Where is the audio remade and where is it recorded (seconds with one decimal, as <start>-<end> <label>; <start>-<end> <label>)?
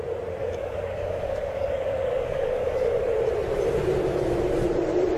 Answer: 0.0-0.4 recorded; 0.4-3.0 remade; 3.0-5.2 recorded